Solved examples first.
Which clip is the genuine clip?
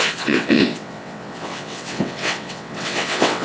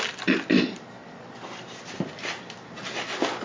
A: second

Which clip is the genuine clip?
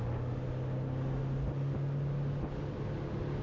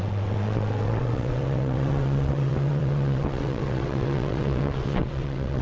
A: first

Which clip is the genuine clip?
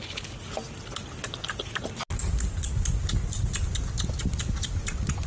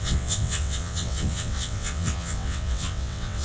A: first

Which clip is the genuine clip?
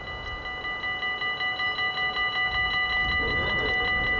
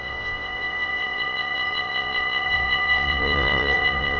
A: first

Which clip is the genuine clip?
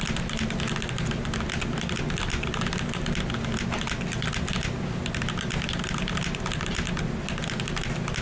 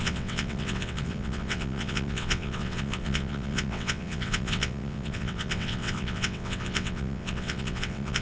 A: first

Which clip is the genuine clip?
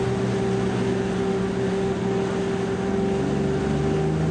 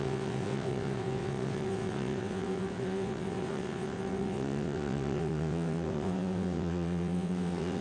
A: first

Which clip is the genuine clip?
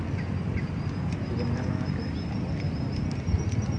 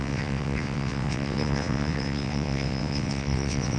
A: first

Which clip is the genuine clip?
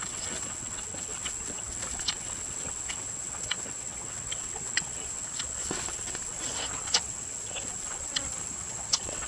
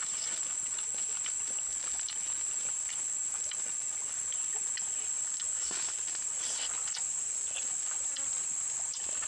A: second